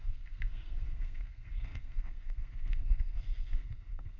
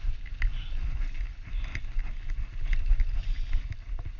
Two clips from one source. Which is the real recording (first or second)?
second